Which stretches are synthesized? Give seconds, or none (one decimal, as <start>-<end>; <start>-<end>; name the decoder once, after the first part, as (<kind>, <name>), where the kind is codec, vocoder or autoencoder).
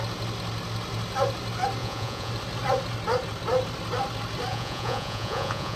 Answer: 1.8-2.3 (vocoder, Vocos); 4.5-5.8